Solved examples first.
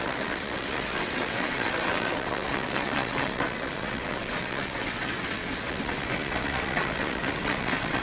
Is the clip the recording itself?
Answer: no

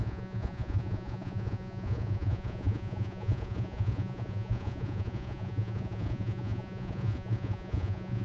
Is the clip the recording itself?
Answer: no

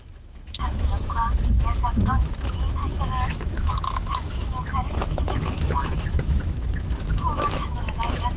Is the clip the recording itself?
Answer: no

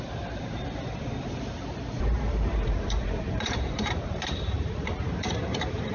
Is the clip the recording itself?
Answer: no